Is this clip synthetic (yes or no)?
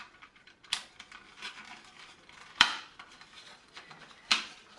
yes